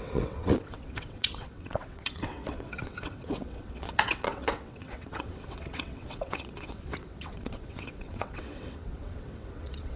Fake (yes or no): yes